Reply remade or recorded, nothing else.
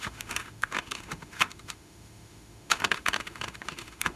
remade